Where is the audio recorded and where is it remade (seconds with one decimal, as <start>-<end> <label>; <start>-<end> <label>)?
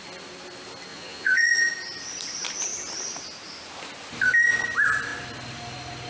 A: 0.0-0.9 recorded; 0.9-1.7 remade; 1.7-6.1 recorded